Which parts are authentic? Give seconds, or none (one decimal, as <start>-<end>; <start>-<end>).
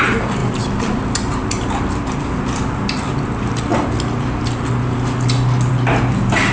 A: 0.0-6.5